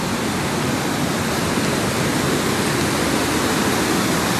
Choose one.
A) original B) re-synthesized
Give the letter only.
A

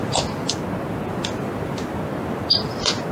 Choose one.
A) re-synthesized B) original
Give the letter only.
B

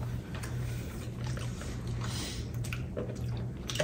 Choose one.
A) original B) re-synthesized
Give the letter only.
B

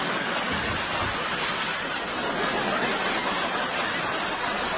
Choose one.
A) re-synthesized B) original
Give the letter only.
B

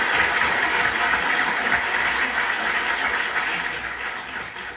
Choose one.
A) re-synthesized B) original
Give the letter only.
B